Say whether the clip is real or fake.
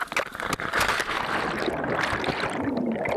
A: real